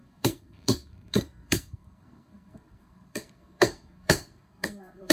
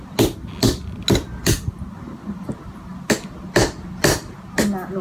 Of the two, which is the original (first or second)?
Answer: second